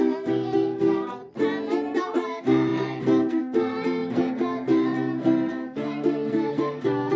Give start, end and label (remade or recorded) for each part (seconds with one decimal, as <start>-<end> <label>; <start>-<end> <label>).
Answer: 0.0-1.2 remade; 1.2-2.0 recorded; 2.0-7.2 remade